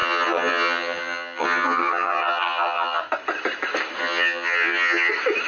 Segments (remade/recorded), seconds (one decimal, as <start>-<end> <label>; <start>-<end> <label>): 0.0-3.0 remade; 3.0-4.0 recorded; 4.0-5.1 remade; 5.1-5.5 recorded